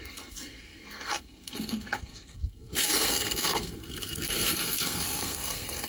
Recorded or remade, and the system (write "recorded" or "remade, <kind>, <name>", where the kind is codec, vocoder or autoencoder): remade, codec, SNAC